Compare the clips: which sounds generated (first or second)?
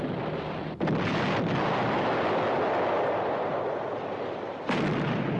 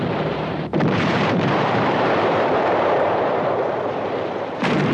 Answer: second